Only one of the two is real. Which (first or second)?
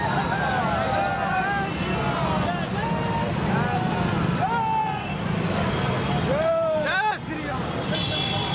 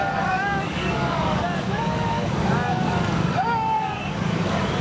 first